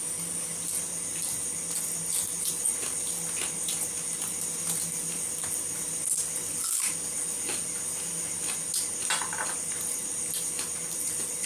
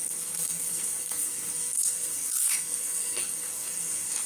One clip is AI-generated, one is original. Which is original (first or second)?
first